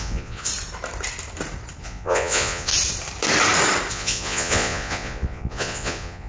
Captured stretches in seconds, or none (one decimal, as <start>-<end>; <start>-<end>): 0.5-1.8; 2.7-3.9